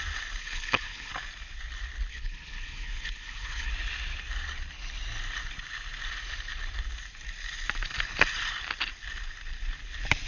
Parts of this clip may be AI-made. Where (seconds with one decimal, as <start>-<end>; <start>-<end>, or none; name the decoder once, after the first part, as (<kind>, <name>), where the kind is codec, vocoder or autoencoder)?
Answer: 0.4-1.1 (codec, HILCodec); 2.1-3.7